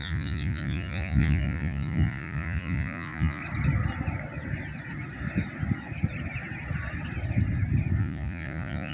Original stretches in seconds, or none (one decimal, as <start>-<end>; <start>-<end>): 3.4-8.0

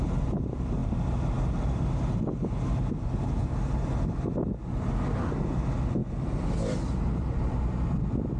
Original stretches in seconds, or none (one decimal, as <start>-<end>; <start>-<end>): 0.0-8.4

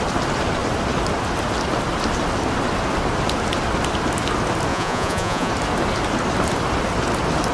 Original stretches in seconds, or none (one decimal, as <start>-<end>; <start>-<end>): 0.0-4.7; 5.5-7.5

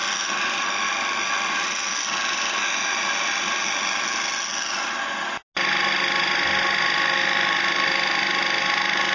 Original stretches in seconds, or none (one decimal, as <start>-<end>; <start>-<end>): 0.0-9.1

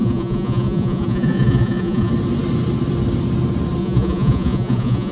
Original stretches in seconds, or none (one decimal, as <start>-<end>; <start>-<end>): 2.1-3.8

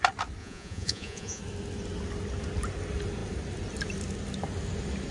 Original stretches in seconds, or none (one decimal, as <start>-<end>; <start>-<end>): 0.0-0.4; 1.4-5.1

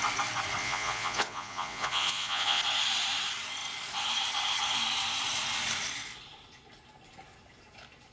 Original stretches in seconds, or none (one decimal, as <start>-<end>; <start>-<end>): 0.0-0.6; 2.6-8.1